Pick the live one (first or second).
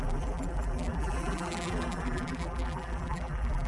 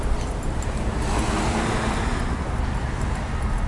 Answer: second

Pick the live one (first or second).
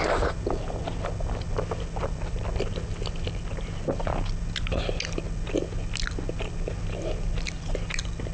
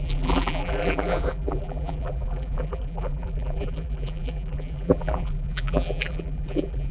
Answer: first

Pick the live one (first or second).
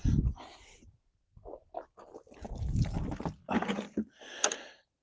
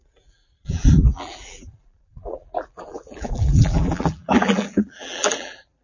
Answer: first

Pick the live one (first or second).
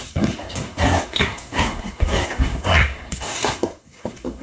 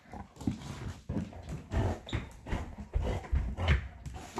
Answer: second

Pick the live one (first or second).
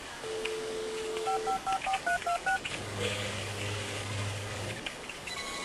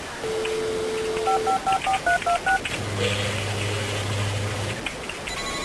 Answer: second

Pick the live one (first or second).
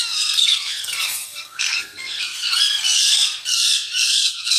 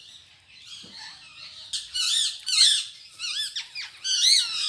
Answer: second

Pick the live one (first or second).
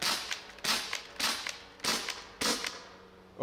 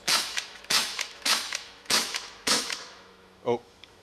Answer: first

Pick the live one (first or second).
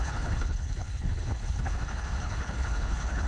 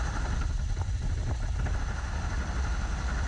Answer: second